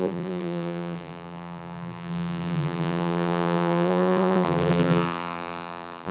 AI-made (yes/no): yes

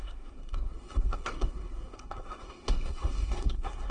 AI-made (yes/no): yes